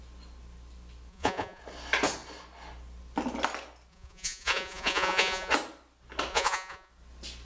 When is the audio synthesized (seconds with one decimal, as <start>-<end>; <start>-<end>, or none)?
1.1-1.6; 3.9-5.5; 6.3-6.9

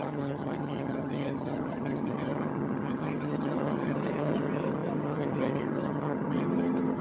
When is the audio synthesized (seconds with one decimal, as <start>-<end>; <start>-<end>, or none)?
0.0-7.0

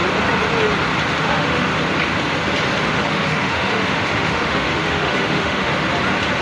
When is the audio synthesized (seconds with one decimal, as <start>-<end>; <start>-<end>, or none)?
1.2-1.7; 2.9-5.7

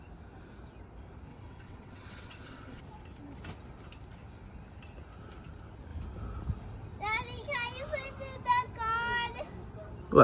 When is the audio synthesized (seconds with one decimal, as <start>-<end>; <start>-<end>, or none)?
1.3-2.8

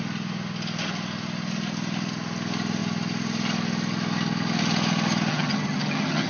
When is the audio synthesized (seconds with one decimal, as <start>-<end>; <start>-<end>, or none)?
5.3-6.3